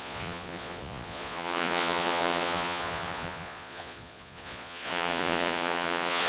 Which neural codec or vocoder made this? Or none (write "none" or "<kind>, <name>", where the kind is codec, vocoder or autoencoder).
vocoder, Vocos